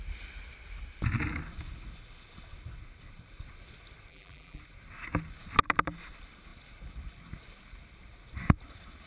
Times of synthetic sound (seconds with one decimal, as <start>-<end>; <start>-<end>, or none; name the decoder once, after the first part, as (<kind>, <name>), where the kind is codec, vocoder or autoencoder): 4.1-4.6 (vocoder, BigVGAN v2)